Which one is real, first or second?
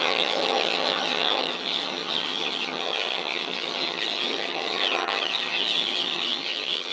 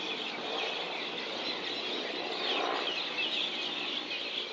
second